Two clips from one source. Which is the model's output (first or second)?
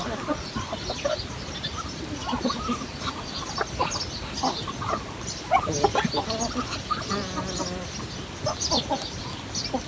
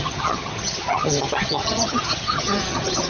second